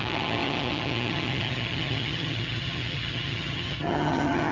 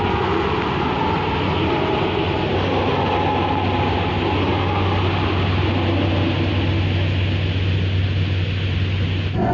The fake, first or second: first